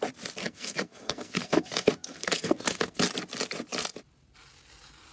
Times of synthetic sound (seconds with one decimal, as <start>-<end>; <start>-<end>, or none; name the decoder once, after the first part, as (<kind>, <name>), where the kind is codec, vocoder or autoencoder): 0.4-3.0 (codec, SNAC)